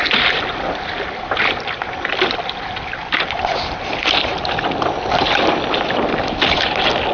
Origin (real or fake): real